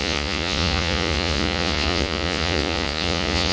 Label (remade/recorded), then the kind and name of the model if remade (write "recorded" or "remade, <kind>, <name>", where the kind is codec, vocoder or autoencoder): remade, vocoder, Vocos